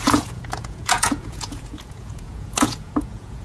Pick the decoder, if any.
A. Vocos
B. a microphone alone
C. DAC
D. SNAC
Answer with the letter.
A